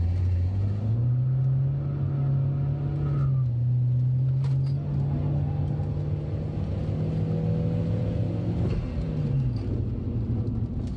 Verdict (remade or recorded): recorded